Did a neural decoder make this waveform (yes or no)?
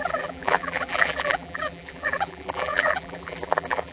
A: yes